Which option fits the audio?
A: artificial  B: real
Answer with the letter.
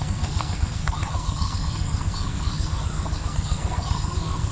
A